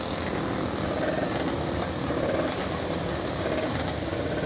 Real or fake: real